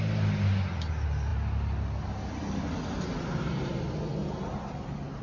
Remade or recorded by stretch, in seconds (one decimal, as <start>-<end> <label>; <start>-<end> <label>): 0.0-5.2 recorded